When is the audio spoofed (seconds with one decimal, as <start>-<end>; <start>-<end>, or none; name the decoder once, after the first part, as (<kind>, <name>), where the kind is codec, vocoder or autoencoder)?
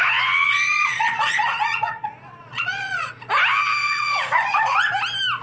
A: 0.4-3.1 (vocoder, Vocos); 3.8-4.9